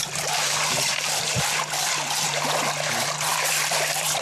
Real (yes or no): no